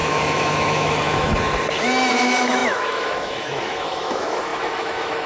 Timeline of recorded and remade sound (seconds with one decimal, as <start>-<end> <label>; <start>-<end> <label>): 0.0-1.3 remade; 1.3-2.1 recorded; 2.1-5.3 remade